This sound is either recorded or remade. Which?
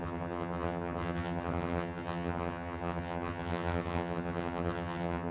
remade